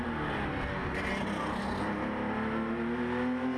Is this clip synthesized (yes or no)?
no